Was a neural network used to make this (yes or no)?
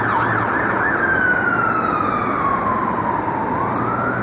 no